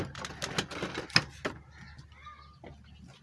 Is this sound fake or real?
real